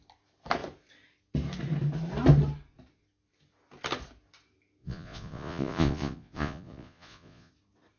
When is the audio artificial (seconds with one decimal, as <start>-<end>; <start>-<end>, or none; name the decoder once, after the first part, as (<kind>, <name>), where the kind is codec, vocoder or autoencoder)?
4.8-7.5 (vocoder, Vocos)